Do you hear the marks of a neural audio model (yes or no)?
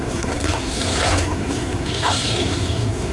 yes